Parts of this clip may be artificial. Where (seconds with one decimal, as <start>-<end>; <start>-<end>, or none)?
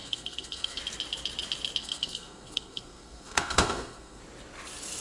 0.0-0.8; 1.8-4.2